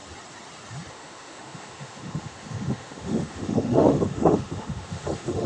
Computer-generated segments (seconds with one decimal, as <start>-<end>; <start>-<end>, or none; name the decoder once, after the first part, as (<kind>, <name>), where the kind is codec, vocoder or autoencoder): 0.9-5.5 (autoencoder, DAC-VAE)